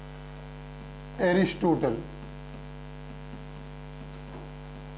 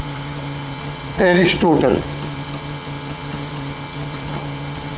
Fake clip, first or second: second